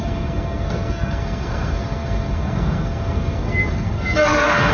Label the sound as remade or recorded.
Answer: remade